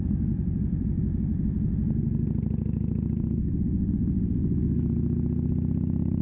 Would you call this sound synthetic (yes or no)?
no